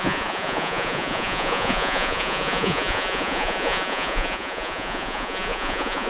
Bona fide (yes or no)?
no